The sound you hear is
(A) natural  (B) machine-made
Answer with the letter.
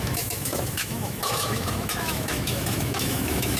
B